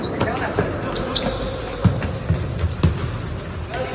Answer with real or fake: real